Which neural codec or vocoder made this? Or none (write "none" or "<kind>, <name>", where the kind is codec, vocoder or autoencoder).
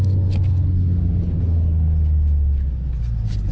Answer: none